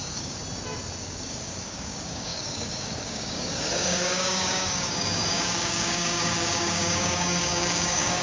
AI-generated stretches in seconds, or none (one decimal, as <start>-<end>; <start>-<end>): 0.0-0.4; 1.0-8.2